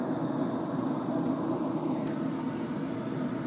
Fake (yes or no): no